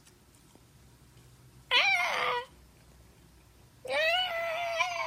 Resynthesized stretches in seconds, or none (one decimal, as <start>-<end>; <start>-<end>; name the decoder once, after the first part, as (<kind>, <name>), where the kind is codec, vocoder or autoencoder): none